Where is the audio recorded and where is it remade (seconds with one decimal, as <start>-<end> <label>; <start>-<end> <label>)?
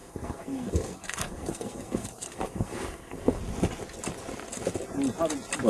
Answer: 0.0-3.4 remade; 3.4-5.7 recorded